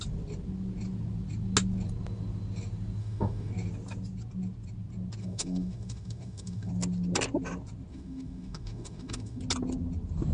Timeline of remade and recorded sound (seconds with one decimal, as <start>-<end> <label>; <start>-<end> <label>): 0.0-3.0 recorded; 3.0-3.5 remade; 3.5-5.2 recorded; 5.2-6.7 remade; 6.7-7.9 recorded; 7.9-9.4 remade; 9.4-10.3 recorded